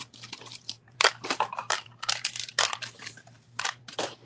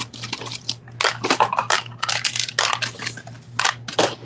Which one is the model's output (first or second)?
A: first